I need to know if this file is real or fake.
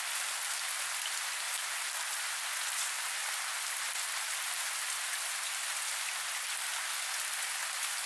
real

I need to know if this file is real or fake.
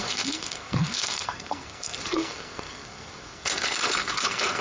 fake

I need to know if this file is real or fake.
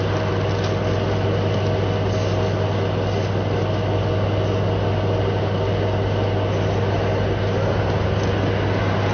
real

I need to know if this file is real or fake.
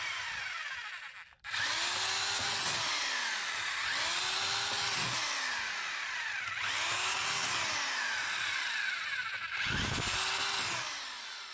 real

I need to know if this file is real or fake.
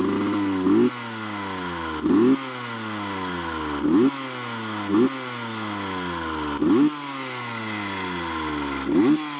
real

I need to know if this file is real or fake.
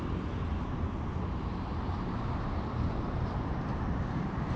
fake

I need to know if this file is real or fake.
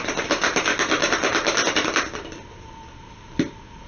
real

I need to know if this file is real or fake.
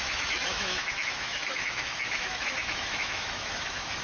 fake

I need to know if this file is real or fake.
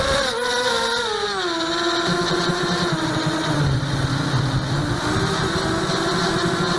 real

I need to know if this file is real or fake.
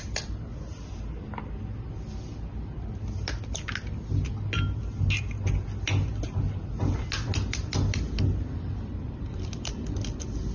real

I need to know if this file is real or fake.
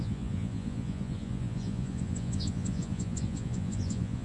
fake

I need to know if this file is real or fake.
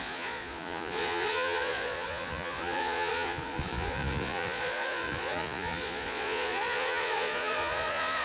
fake